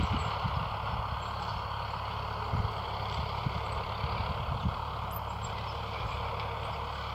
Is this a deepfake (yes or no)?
no